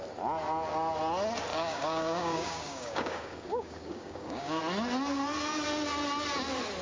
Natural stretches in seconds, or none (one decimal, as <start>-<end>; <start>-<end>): 0.0-1.5; 4.6-6.8